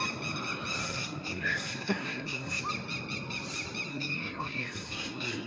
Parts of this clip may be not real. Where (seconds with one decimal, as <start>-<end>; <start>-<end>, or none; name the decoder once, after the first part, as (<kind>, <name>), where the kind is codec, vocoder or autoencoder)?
0.8-2.6 (codec, SNAC); 3.9-5.5